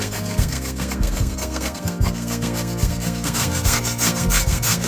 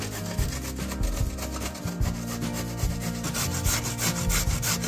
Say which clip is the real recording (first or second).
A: second